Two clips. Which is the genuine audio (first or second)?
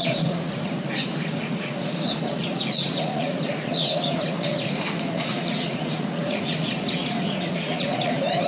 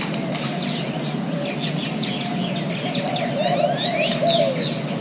second